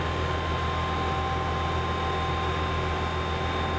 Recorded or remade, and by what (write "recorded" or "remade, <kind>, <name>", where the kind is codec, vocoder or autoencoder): recorded